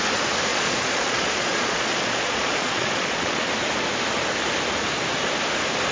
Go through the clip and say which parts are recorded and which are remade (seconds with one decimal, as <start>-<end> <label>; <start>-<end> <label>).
0.0-0.5 recorded; 0.5-3.5 remade; 3.5-5.9 recorded

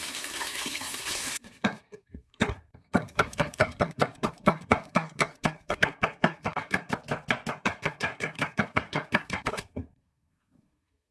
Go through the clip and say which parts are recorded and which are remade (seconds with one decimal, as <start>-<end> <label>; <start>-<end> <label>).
0.0-6.9 remade; 6.9-7.5 recorded; 7.5-11.1 remade

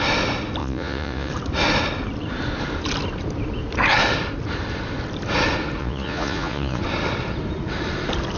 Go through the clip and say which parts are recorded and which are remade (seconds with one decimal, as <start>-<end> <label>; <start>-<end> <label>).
0.0-0.6 recorded; 0.6-1.3 remade; 1.3-5.8 recorded; 5.8-6.8 remade; 6.8-8.4 recorded

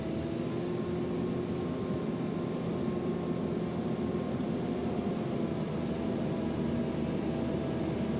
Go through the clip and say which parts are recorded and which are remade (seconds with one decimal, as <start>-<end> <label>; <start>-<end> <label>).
0.0-8.2 recorded

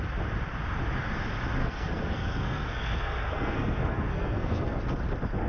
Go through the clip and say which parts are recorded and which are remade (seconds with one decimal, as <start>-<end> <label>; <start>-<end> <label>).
0.0-1.6 recorded; 1.6-4.8 remade; 4.8-5.5 recorded

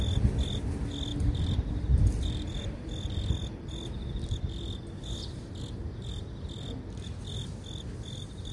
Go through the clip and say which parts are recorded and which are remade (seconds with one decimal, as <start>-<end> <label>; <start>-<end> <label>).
0.0-1.1 recorded; 1.1-5.6 remade; 5.6-8.5 recorded